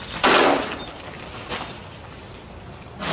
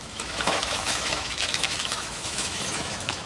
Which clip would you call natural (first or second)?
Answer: first